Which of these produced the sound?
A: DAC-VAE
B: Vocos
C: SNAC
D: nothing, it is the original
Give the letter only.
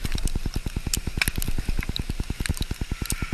D